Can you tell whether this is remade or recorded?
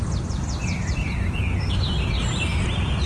recorded